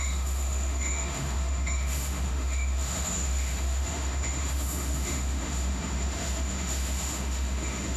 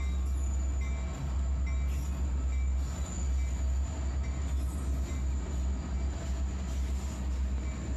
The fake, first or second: first